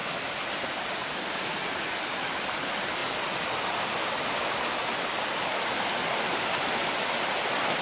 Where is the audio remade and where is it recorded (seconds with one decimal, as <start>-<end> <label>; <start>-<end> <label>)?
0.0-7.8 recorded